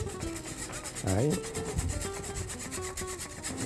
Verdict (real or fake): real